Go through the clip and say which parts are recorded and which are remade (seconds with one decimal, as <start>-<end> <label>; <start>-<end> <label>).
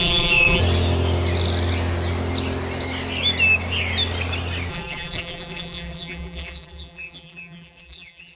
0.0-0.6 remade; 0.6-4.7 recorded; 4.7-8.4 remade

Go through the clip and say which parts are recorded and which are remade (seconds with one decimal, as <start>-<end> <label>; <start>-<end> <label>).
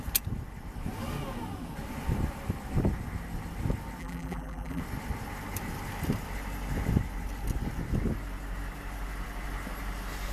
0.0-4.0 recorded; 4.0-4.8 remade; 4.8-10.3 recorded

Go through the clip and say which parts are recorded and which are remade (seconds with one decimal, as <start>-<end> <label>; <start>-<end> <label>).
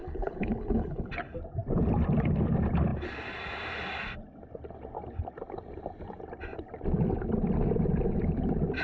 0.0-1.1 remade; 1.1-8.8 recorded